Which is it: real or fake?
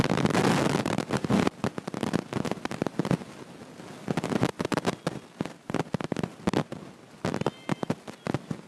real